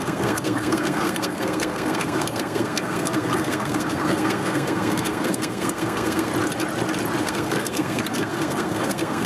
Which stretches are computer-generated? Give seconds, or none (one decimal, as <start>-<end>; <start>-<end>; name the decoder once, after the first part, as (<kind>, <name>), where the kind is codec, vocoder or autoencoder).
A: 0.0-6.3 (codec, SNAC); 7.2-9.3